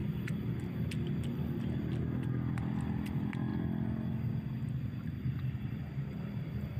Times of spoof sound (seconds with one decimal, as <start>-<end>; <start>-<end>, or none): 0.0-3.5; 5.7-6.8